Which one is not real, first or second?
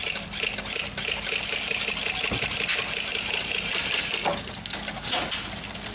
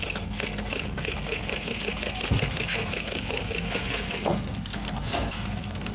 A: second